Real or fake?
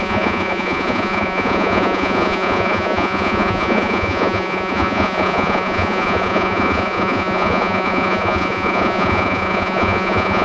fake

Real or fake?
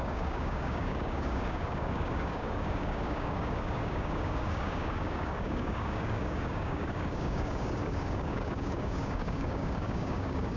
fake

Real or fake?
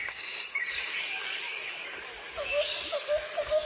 fake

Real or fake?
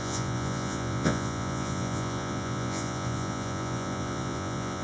fake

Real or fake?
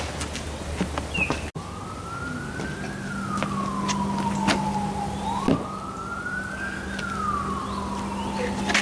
real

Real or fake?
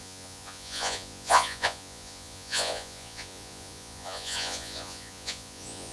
fake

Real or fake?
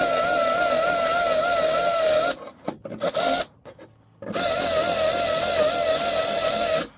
real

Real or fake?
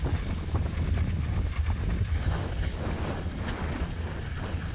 real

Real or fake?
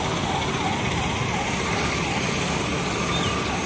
real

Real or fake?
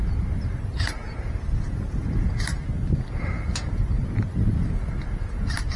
real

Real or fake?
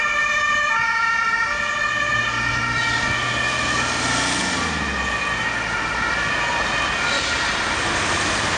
real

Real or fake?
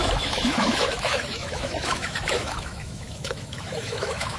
fake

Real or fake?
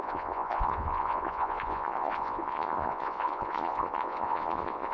fake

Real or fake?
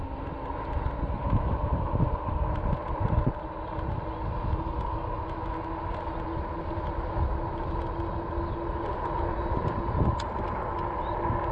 real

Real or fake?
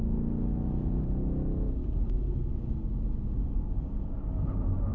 real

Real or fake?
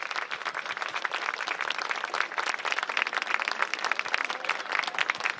real